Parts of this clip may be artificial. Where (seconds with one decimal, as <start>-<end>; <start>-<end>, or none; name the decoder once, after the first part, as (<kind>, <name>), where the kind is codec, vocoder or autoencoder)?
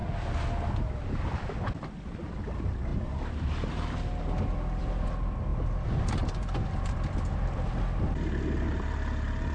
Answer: none